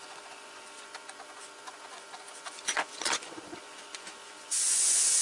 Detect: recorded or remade remade